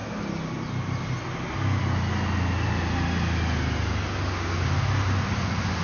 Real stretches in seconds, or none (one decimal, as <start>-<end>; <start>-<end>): 0.0-5.8